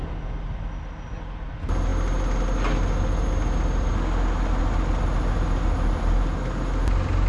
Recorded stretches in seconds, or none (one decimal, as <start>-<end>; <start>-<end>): 0.0-7.3